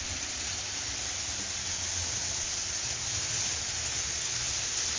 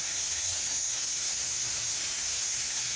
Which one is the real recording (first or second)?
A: first